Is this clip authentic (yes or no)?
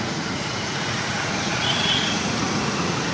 no